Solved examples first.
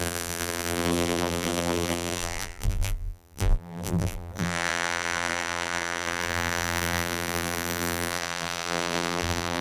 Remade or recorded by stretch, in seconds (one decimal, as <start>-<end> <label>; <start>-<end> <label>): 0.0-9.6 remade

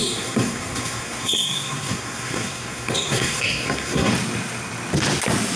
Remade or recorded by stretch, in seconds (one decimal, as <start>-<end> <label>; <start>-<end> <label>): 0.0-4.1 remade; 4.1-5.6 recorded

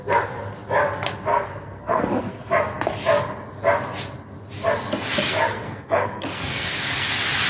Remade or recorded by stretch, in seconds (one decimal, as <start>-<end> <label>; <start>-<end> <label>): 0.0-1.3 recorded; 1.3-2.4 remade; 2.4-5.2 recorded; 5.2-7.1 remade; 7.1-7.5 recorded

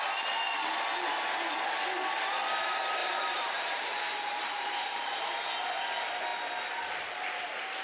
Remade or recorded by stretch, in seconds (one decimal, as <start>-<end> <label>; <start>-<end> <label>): 0.0-3.0 recorded; 3.0-5.5 remade; 5.5-7.8 recorded

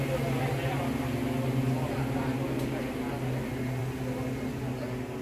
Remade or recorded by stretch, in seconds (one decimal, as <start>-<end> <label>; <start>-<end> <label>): 0.0-5.2 recorded

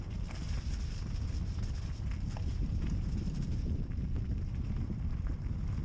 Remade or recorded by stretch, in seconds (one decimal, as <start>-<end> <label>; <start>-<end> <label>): 0.0-2.5 recorded; 2.5-3.5 remade; 3.5-5.8 recorded

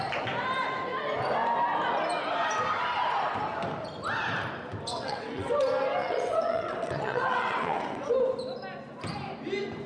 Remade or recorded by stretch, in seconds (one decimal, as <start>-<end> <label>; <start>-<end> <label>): 0.0-4.9 recorded; 4.9-5.5 remade; 5.5-6.0 recorded; 6.0-8.1 remade; 8.1-9.9 recorded